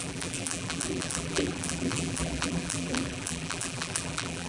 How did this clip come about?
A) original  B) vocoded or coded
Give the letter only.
B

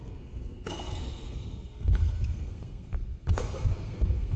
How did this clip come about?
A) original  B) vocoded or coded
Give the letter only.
B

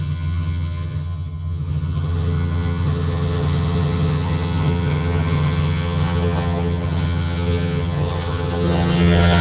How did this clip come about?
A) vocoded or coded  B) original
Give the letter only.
A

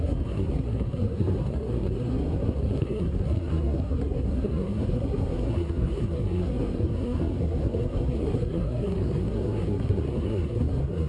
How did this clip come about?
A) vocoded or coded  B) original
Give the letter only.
A